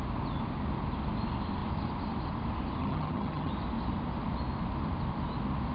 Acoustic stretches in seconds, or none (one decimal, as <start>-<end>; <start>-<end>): 0.0-2.8; 3.5-5.7